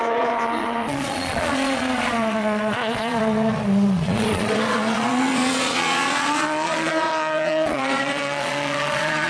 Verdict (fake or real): fake